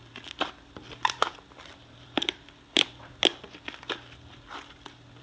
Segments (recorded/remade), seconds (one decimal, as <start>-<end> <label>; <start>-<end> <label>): 0.0-2.2 remade; 2.2-2.9 recorded; 2.9-3.3 remade; 3.3-5.2 recorded